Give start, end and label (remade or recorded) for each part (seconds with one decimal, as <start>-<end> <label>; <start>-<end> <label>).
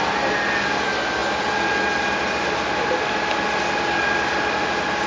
0.0-5.1 recorded